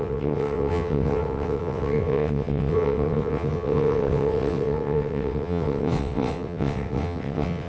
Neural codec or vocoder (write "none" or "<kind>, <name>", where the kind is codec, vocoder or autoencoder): vocoder, WaveNeXt